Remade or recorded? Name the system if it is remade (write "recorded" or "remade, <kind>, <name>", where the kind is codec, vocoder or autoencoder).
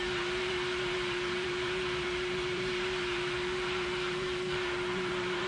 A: remade, vocoder, BigVGAN v2